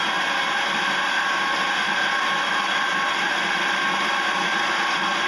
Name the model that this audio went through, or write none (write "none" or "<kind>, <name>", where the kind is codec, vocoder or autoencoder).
none